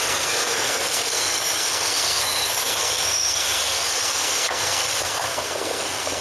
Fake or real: fake